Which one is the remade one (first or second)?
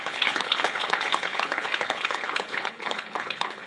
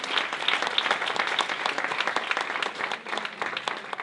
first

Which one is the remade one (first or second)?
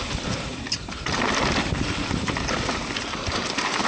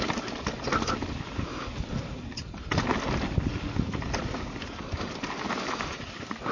first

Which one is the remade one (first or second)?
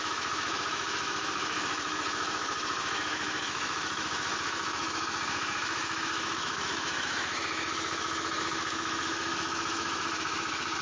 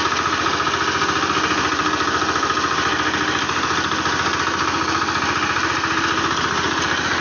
first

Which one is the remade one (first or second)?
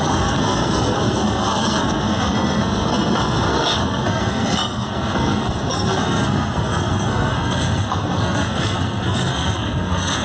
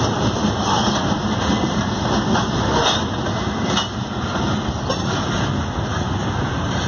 first